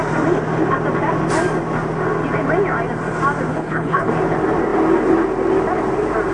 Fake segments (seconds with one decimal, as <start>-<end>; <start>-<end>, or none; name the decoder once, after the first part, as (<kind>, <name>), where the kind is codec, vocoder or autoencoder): 3.5-4.1 (codec, HILCodec)